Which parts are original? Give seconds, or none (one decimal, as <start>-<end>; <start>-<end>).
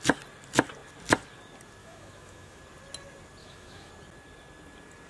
0.0-1.8; 2.6-3.4; 3.9-5.1